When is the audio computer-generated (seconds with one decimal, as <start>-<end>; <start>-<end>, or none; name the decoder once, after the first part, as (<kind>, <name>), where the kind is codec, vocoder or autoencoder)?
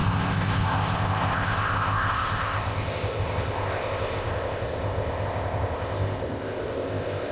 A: 0.0-7.3 (codec, ZipCodec)